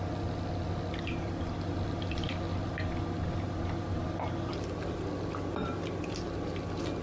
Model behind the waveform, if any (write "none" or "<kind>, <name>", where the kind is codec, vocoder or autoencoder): none